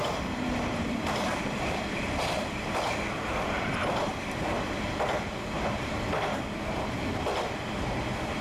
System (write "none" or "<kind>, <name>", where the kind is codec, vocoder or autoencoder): vocoder, BigVGAN v2